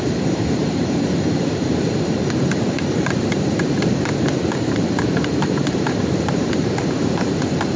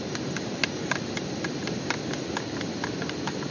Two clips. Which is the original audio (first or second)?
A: second